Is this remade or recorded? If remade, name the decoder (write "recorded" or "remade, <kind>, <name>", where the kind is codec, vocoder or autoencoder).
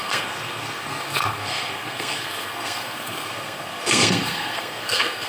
remade, codec, SNAC